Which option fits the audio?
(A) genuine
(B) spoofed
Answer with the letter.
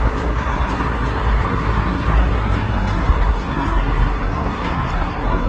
B